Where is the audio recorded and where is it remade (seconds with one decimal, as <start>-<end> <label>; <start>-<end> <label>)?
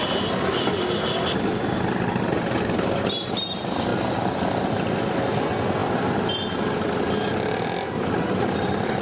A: 0.0-9.0 recorded